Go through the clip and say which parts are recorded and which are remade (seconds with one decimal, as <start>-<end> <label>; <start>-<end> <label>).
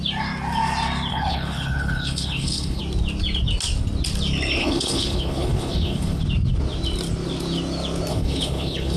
0.0-1.1 recorded; 1.1-2.8 remade; 2.8-4.6 recorded; 4.6-6.2 remade; 6.2-8.1 recorded; 8.1-9.0 remade